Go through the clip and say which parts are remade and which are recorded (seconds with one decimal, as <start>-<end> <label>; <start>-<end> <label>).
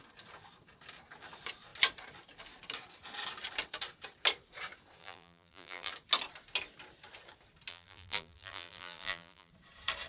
0.0-5.0 recorded; 5.0-5.9 remade; 5.9-7.7 recorded; 7.7-9.5 remade; 9.5-10.1 recorded